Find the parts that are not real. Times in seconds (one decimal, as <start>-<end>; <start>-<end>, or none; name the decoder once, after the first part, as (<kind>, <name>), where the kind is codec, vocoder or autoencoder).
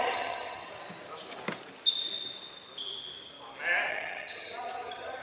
0.0-0.8 (vocoder, HiFi-GAN); 3.9-5.2